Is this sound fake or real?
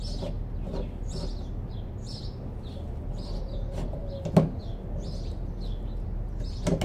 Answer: real